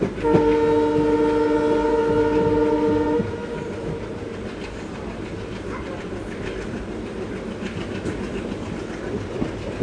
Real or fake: real